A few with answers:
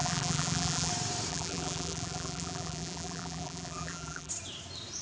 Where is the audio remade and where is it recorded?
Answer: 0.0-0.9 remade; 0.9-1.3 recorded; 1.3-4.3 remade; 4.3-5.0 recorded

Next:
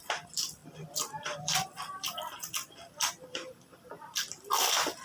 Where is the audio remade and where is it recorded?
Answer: 0.0-0.6 recorded; 0.6-3.6 remade; 3.6-5.0 recorded

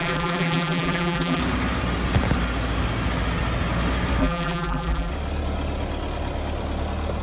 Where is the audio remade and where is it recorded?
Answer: 0.0-1.4 remade; 1.4-4.2 recorded; 4.2-5.1 remade; 5.1-7.2 recorded

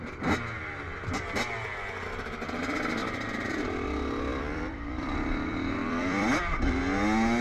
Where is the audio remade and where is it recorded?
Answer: 0.0-3.0 recorded; 3.0-3.6 remade; 3.6-4.3 recorded; 4.3-6.8 remade; 6.8-7.4 recorded

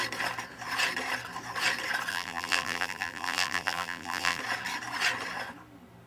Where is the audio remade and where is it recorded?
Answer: 0.0-2.1 recorded; 2.1-4.4 remade; 4.4-6.1 recorded